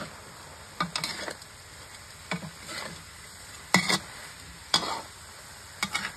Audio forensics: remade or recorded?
recorded